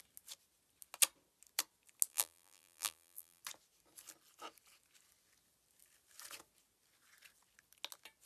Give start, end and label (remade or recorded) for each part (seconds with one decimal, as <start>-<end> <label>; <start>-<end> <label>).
0.0-2.1 recorded; 2.1-3.4 remade; 3.4-8.3 recorded